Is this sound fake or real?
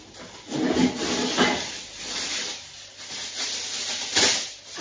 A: real